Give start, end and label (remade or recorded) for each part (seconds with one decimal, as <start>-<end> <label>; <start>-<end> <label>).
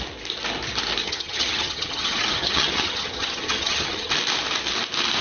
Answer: 0.0-1.0 recorded; 1.0-4.1 remade; 4.1-5.2 recorded